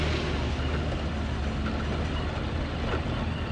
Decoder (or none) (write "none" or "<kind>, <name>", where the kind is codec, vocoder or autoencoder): none